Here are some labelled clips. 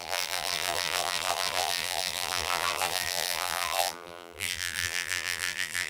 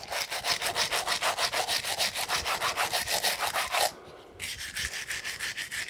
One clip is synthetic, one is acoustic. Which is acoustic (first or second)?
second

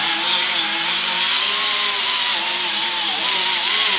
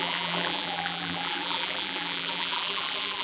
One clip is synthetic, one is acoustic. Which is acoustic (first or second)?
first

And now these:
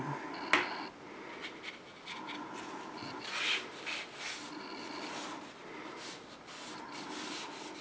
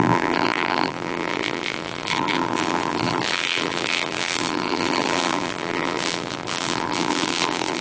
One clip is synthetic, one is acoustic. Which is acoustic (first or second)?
first